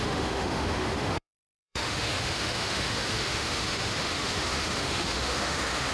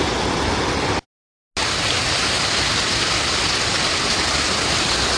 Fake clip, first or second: first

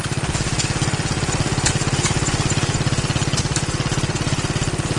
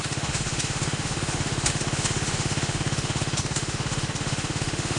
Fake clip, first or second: second